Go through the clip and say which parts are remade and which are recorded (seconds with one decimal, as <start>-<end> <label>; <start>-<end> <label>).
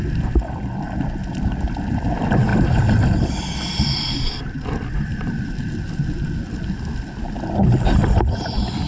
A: 0.0-2.5 recorded; 2.5-7.1 remade; 7.1-8.9 recorded